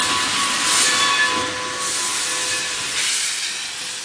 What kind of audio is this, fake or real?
real